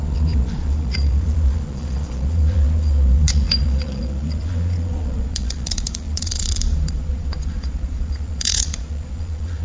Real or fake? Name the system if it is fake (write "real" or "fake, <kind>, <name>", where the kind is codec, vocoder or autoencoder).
fake, vocoder, Vocos